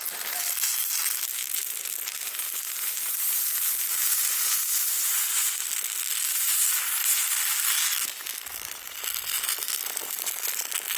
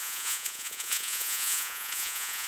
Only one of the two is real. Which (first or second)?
first